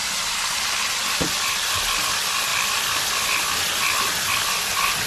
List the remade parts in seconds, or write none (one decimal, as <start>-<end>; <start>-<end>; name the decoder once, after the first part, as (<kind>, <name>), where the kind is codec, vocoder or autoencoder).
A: none